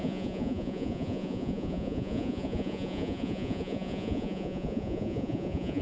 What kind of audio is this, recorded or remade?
remade